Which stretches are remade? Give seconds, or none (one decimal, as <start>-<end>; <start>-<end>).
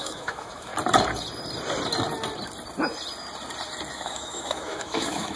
0.0-0.7; 3.9-5.4